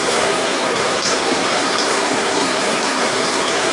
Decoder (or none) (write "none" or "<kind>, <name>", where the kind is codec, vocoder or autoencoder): codec, SNAC